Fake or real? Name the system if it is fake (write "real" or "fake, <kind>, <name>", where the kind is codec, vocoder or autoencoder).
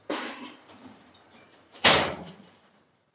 fake, vocoder, BigVGAN v2